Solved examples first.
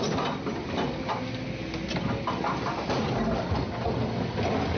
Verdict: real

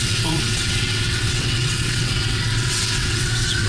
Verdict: fake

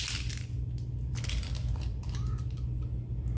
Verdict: real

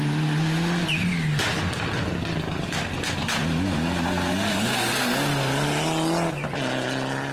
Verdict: real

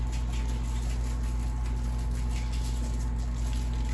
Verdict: real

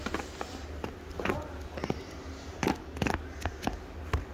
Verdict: real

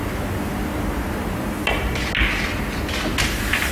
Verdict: real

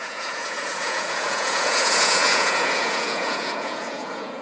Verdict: fake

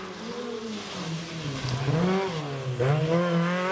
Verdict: real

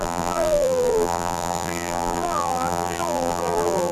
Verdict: fake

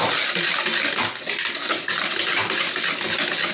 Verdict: real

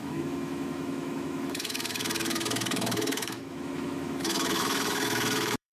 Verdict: fake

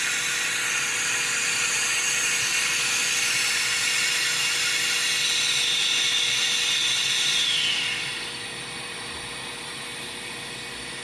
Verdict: real